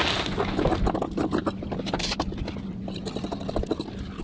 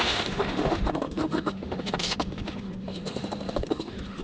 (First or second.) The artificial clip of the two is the second